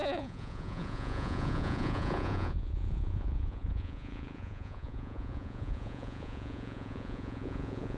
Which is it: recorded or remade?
remade